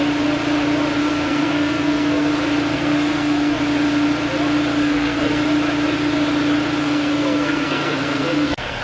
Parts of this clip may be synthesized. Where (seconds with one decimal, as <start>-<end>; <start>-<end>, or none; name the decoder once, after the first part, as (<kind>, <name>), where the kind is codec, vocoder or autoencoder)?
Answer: 1.0-2.3 (codec, SNAC); 2.7-3.6; 4.8-5.4; 6.8-8.8